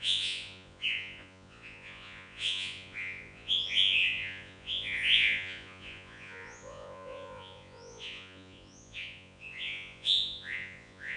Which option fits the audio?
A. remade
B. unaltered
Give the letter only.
A